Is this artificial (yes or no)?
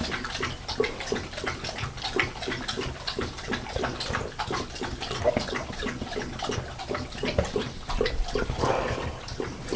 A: no